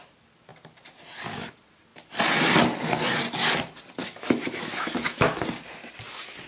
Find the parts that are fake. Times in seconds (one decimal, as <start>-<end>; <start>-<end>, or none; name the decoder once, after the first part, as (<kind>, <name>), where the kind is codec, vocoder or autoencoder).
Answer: 4.0-5.4 (autoencoder, DAC-VAE)